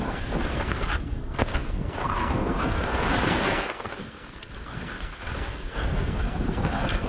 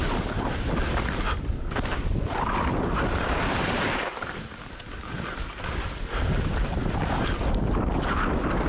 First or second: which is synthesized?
first